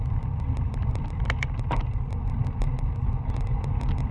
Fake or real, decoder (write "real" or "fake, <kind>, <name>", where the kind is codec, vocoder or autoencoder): fake, vocoder, BigVGAN v2